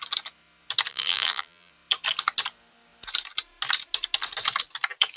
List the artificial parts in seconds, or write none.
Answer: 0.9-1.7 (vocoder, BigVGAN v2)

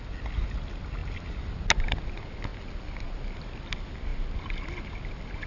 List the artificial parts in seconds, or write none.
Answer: none

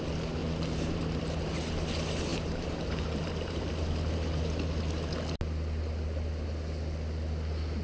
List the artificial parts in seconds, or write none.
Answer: 0.4-1.0 (vocoder, BigVGAN v2); 2.3-3.7

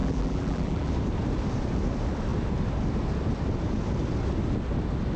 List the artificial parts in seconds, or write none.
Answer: 0.0-0.9 (vocoder, BigVGAN v2)

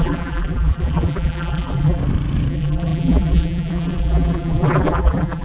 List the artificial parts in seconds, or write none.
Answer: 0.0-2.0 (vocoder, BigVGAN v2); 2.5-5.4

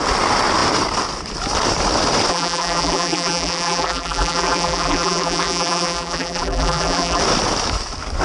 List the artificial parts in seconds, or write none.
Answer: 2.3-7.2 (vocoder, BigVGAN v2)